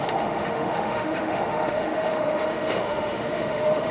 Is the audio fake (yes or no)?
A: yes